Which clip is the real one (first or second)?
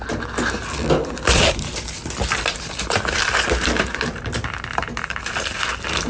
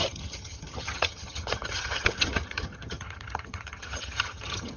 first